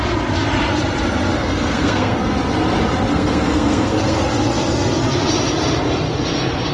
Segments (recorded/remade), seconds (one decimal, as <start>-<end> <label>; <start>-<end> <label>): 0.0-1.3 recorded; 1.3-2.2 remade; 2.2-3.1 recorded; 3.1-4.2 remade; 4.2-6.7 recorded